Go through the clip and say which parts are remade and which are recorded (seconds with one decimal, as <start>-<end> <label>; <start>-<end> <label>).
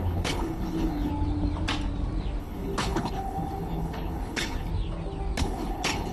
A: 0.0-1.1 remade; 1.1-2.4 recorded; 2.4-4.7 remade; 4.7-5.4 recorded; 5.4-6.1 remade